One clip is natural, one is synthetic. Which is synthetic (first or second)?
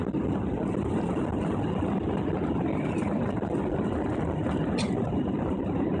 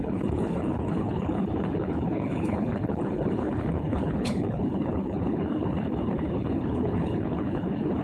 second